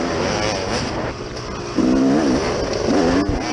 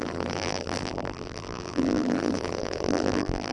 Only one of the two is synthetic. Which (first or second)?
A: second